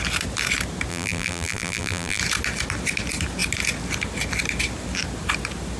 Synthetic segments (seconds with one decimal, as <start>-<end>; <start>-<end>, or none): 0.9-2.2